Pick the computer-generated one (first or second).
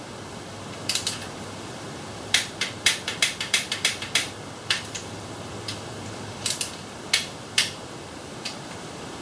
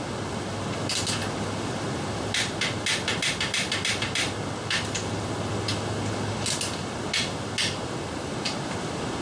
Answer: first